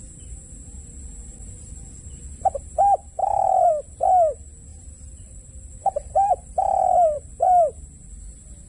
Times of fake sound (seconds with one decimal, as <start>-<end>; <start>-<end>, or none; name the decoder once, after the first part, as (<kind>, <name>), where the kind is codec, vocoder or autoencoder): 3.2-3.7 (vocoder, BigVGAN v2); 4.7-7.8